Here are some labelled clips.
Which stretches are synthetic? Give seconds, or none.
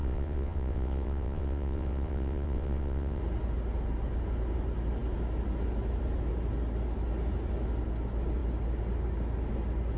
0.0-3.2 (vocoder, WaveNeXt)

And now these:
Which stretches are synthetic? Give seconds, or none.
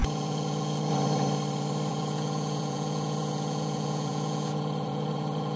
0.0-0.9 (vocoder, Vocos); 1.9-5.6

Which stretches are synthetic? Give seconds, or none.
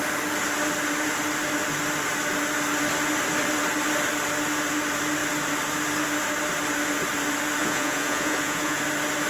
7.6-8.8 (vocoder, Vocos)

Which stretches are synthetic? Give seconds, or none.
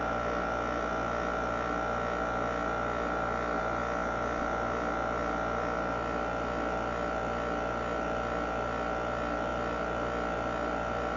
none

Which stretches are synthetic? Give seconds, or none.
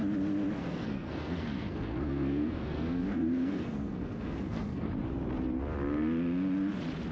0.6-4.9 (codec, SNAC)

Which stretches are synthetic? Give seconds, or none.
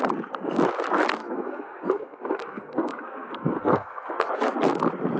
1.2-4.3 (codec, SNAC)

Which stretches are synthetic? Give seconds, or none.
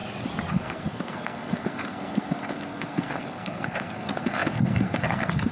0.5-5.5 (codec, SNAC)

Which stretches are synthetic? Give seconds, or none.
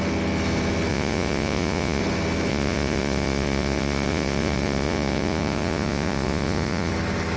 0.9-2.0 (vocoder, Vocos); 2.5-6.9